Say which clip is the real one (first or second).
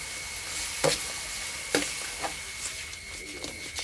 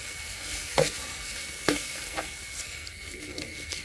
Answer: first